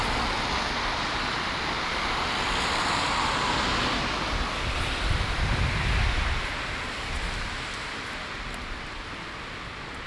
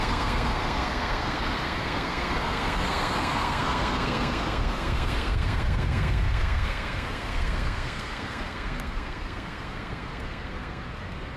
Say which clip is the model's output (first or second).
second